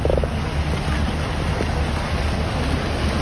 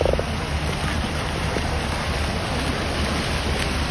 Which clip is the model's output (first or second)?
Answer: second